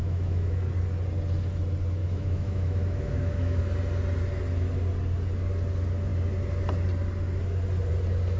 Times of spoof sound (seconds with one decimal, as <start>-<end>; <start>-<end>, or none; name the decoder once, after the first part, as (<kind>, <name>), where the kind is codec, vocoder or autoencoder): 0.0-0.6 (autoencoder, DAC-VAE); 2.0-3.6